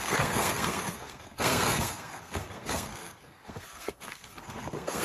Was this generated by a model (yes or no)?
yes